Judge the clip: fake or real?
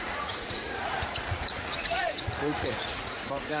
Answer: fake